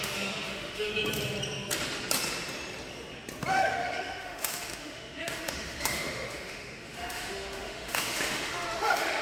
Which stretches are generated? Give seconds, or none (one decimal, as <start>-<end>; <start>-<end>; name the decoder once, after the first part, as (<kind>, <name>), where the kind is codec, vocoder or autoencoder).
0.0-0.9 (autoencoder, DAC-VAE); 3.5-9.2